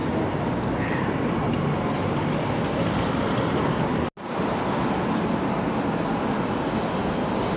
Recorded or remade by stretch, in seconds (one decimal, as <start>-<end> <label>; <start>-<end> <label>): 0.0-7.6 recorded